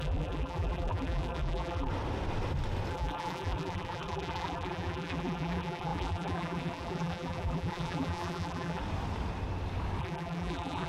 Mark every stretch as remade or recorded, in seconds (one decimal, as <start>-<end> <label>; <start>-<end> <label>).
0.0-1.9 remade; 1.9-2.9 recorded; 2.9-8.8 remade; 8.8-10.0 recorded; 10.0-10.9 remade